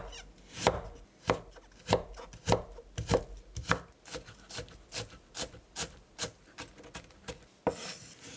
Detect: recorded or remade recorded